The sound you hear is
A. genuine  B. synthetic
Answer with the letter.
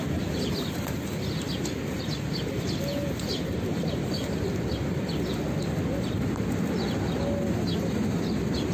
A